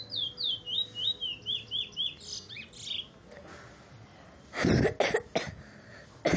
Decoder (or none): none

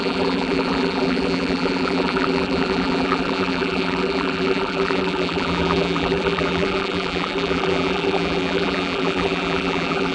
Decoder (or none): vocoder, BigVGAN v2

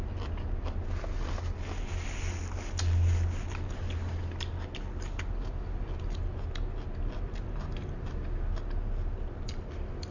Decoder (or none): none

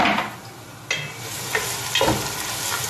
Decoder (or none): none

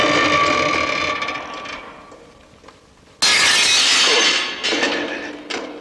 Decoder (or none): none